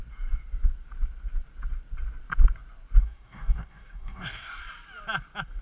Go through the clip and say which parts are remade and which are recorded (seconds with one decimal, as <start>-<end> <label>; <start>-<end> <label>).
0.0-3.0 recorded; 3.0-4.6 remade; 4.6-5.6 recorded